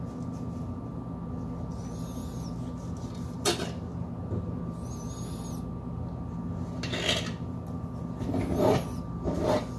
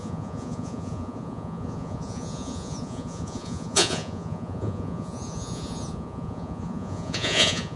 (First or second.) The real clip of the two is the first